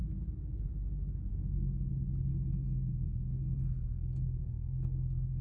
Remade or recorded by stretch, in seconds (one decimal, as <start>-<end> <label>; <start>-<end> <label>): 0.0-1.3 recorded; 1.3-1.9 remade; 1.9-2.3 recorded; 2.3-5.4 remade